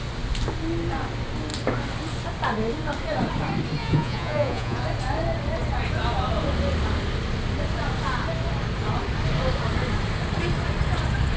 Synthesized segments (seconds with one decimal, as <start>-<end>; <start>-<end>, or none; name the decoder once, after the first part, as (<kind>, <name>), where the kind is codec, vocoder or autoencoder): 3.8-4.8 (vocoder, Vocos)